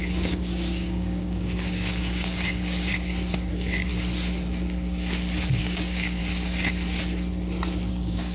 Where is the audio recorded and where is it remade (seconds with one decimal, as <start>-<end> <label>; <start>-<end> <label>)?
0.0-2.9 remade; 2.9-3.5 recorded; 3.5-3.9 remade; 3.9-5.6 recorded; 5.6-6.2 remade; 6.2-7.9 recorded; 7.9-8.3 remade